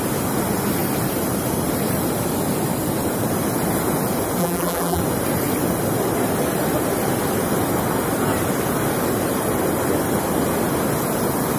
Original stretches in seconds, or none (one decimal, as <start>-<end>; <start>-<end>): 0.0-4.4; 5.0-11.6